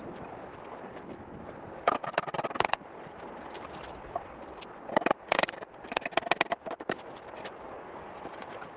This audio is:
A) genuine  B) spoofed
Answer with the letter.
A